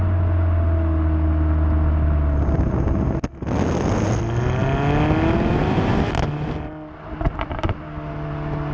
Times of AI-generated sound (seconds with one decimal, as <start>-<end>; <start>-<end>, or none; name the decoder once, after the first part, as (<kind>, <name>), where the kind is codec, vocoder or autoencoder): none